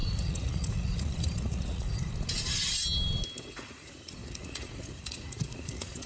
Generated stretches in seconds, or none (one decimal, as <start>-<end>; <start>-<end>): 0.0-2.1; 3.4-6.1